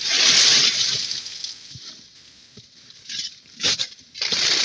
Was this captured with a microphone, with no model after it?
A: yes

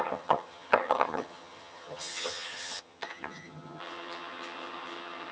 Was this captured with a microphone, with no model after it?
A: no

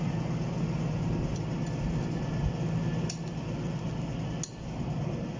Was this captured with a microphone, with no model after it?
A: yes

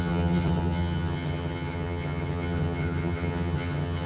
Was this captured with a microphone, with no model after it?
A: no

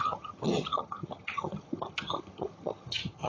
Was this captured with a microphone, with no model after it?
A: no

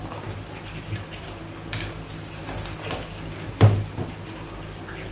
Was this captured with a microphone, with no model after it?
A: yes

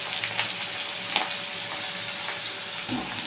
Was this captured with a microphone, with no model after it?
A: yes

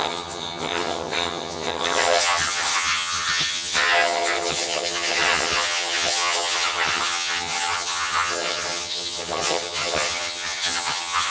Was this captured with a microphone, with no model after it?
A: no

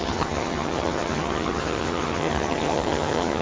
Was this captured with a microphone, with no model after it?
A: no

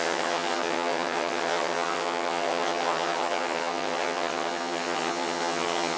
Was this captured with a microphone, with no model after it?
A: no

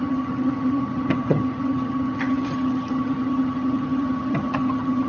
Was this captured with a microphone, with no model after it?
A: no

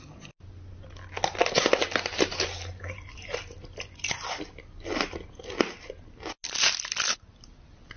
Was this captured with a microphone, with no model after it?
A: yes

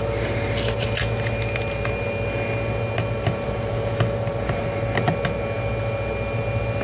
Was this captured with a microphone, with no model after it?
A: yes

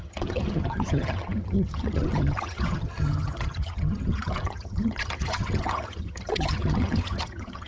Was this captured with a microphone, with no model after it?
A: no